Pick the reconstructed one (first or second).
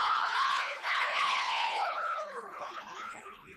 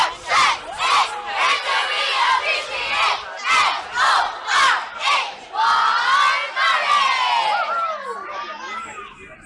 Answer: first